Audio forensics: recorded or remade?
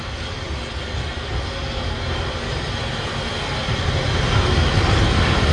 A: recorded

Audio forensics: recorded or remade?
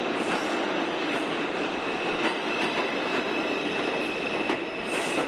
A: recorded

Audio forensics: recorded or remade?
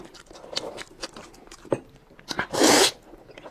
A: remade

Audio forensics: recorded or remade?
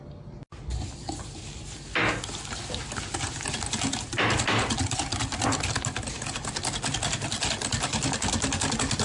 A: recorded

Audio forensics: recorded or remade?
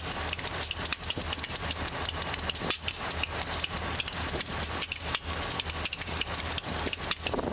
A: recorded